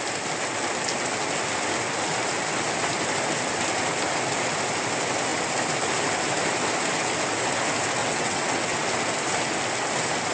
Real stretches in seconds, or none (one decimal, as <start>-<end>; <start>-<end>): 0.0-8.0; 8.6-10.3